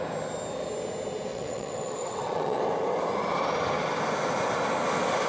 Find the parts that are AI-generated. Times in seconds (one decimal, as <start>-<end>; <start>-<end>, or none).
1.3-2.6